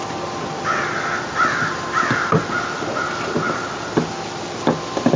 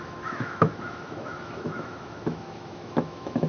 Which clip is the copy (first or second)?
second